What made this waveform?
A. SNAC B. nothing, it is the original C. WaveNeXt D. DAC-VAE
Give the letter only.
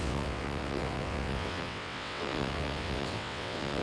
C